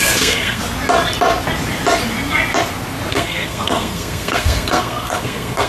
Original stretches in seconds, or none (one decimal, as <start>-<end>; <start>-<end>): 0.6-3.1